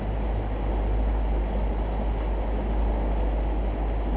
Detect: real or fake real